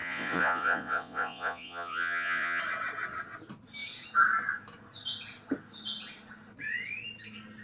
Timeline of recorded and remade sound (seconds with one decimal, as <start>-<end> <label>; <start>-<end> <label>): 0.0-2.6 remade; 2.6-7.6 recorded